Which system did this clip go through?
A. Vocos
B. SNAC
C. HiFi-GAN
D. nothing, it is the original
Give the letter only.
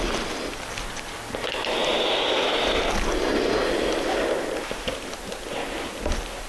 D